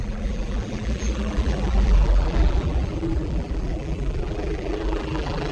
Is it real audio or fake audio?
fake